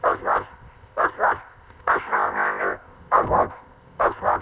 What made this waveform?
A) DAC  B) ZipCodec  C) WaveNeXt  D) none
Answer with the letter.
B